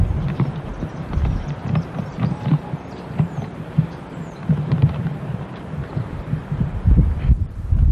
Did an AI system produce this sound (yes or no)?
yes